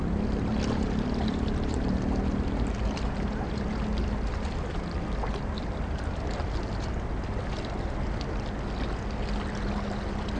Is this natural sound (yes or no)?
yes